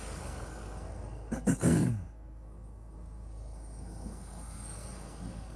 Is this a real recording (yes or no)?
no